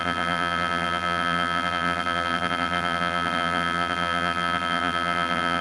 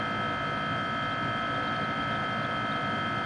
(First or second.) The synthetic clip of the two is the first